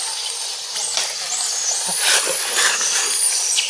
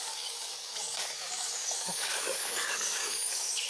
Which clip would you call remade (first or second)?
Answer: second